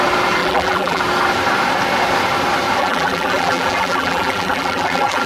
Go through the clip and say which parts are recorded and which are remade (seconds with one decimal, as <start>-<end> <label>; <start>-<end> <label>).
0.0-0.4 recorded; 0.4-1.0 remade; 1.0-2.8 recorded; 2.8-5.3 remade